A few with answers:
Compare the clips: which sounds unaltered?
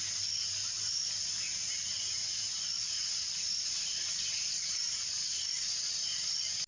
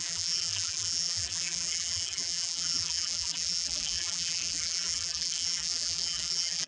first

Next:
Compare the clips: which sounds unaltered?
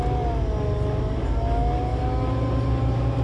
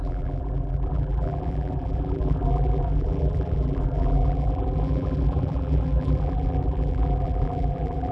first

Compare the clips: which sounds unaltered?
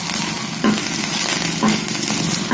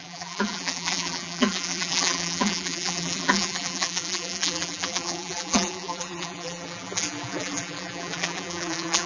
first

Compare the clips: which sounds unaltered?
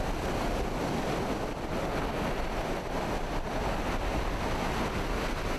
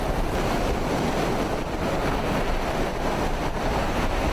first